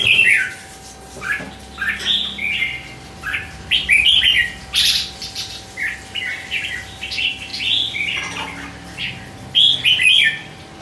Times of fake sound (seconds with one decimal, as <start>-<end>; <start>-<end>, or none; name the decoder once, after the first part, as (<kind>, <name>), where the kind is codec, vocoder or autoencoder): none